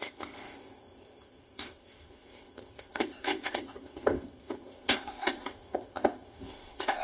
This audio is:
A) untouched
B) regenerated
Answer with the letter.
B